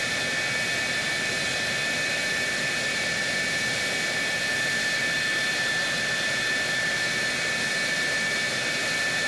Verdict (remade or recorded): recorded